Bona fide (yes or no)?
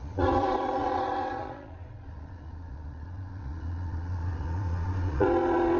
no